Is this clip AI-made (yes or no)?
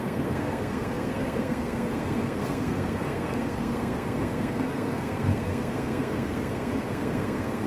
yes